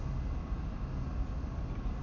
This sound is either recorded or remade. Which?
recorded